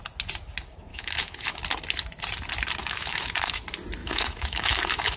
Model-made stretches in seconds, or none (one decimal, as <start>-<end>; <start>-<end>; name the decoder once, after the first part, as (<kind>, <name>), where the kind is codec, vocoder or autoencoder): 0.9-1.6 (autoencoder, DAC-VAE); 2.8-3.6; 4.0-5.2